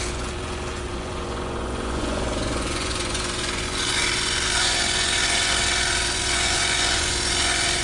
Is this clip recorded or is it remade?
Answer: remade